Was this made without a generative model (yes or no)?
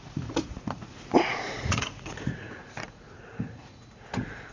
no